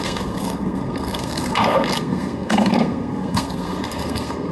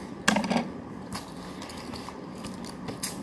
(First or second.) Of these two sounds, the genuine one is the second